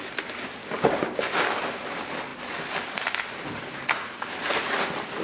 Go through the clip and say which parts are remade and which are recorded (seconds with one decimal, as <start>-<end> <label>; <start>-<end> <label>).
0.0-0.6 recorded; 0.6-1.6 remade; 1.6-5.2 recorded